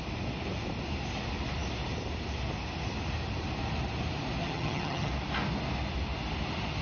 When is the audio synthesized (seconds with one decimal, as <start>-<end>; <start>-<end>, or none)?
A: 4.4-5.1